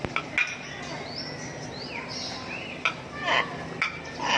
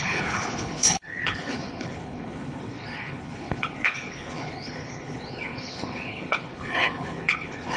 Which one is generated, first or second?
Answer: second